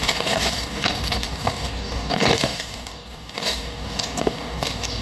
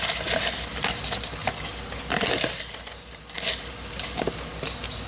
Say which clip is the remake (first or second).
first